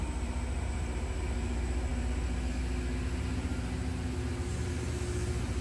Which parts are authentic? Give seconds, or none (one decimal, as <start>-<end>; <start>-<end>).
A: 0.0-5.6